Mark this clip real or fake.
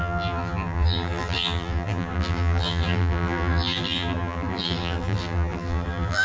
fake